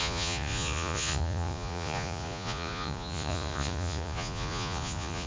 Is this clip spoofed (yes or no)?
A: yes